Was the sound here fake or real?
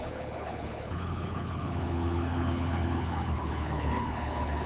fake